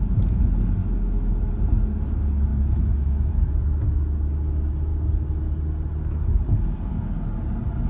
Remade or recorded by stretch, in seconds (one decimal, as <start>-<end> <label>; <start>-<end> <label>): 0.0-0.8 recorded; 0.8-1.5 remade; 1.5-2.5 recorded; 2.5-3.3 remade; 3.3-7.9 recorded